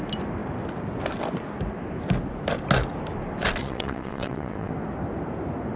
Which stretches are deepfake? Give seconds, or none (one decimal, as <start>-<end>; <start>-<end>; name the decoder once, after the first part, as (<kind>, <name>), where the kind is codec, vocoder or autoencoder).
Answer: 3.6-4.7 (vocoder, WaveNeXt)

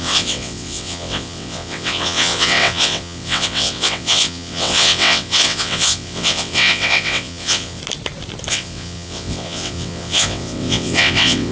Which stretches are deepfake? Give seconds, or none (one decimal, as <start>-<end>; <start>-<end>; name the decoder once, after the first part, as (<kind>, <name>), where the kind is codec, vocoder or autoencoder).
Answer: 0.0-7.8 (vocoder, WaveNeXt); 8.5-11.5